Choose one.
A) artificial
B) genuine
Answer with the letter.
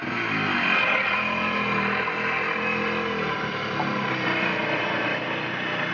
B